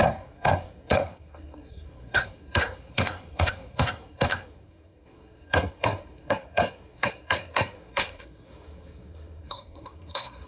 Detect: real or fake fake